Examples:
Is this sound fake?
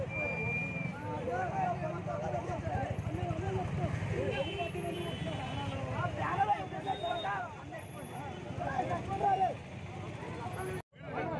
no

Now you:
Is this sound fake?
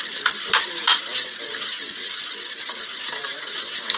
no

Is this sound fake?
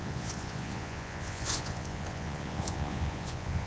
yes